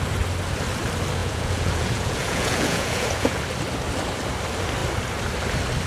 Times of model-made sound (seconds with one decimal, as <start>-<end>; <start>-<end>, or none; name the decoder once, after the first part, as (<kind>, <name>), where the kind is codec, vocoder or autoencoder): 1.2-3.4 (vocoder, Vocos)